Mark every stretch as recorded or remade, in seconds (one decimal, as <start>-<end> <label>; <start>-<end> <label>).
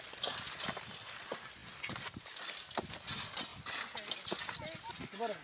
0.0-5.4 recorded